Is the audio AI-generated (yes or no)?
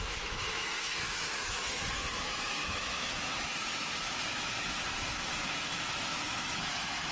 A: yes